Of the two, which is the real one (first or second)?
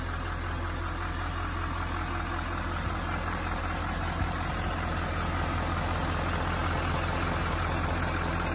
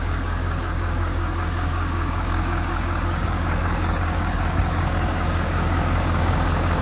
first